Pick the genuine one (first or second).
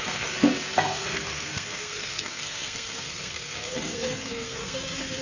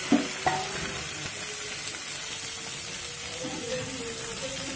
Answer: second